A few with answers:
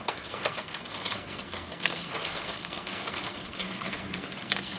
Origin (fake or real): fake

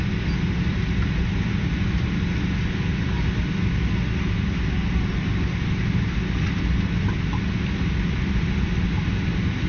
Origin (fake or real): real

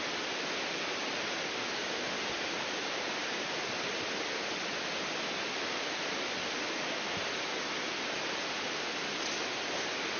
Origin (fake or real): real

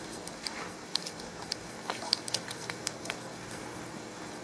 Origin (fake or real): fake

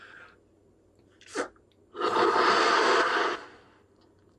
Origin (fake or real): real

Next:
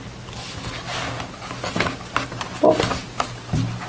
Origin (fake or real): real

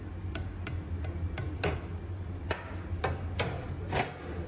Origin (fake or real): real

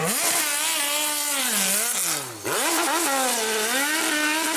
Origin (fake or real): real